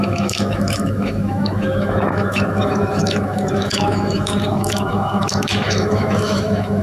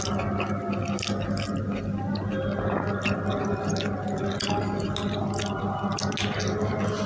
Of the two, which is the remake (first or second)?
first